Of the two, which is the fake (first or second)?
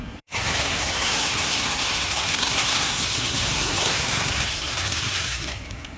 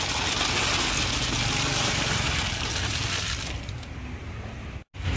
first